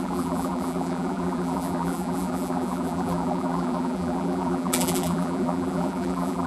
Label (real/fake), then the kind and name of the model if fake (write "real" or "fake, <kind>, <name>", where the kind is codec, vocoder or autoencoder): fake, vocoder, BigVGAN v2